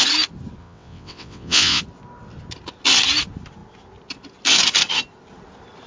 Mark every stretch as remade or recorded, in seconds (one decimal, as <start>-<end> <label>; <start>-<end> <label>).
0.0-0.6 recorded; 0.6-1.8 remade; 1.8-5.9 recorded